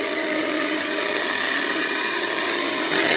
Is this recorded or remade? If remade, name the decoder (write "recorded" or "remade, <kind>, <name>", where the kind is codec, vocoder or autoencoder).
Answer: remade, vocoder, HiFi-GAN